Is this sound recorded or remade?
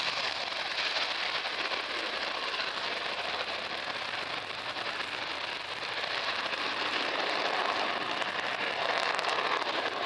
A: remade